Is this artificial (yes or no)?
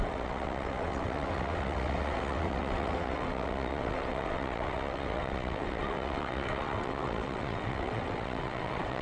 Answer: yes